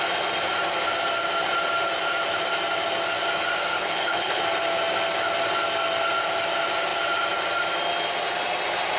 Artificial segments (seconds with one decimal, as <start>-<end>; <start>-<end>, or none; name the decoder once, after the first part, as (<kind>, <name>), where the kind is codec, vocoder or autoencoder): 3.7-4.4 (codec, HILCodec)